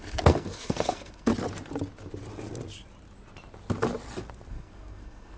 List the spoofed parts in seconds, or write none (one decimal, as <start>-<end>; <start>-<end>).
0.0-1.3; 4.5-5.4